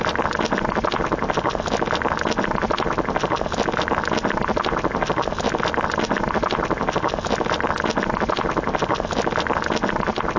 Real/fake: real